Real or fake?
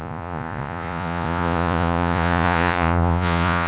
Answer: fake